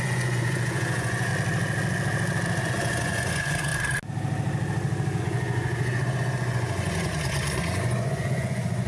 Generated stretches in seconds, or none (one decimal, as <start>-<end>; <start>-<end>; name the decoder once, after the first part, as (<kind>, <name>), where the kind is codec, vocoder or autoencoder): 0.0-1.3 (vocoder, Vocos); 2.6-3.7; 5.2-8.9